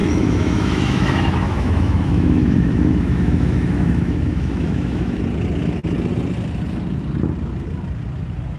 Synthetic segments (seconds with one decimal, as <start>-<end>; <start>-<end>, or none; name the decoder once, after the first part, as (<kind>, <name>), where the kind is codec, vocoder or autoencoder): 0.0-5.2 (autoencoder, DAC-VAE)